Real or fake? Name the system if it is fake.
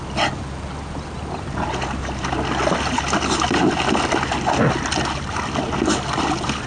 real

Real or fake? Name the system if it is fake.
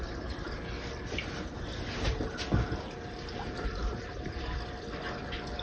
real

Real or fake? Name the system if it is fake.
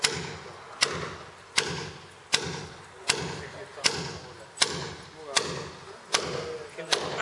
real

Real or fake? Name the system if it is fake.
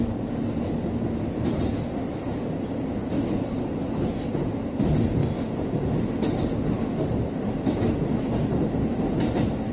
real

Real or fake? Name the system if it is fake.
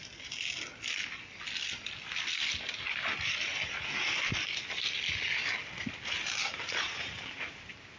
real